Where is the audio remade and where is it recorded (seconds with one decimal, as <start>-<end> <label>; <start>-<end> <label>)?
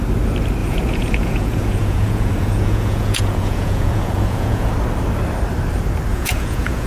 0.0-0.6 recorded; 0.6-4.7 remade; 4.7-6.1 recorded; 6.1-6.9 remade